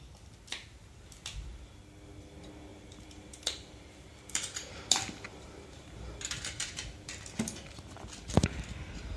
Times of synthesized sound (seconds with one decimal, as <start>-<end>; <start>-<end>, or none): 2.7-4.7; 5.3-6.2